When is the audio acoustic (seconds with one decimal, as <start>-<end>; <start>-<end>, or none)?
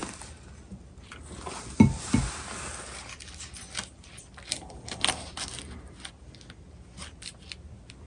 0.0-8.1